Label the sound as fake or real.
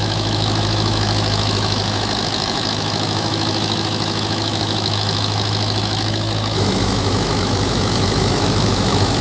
fake